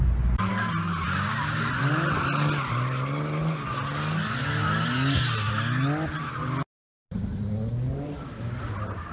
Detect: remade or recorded recorded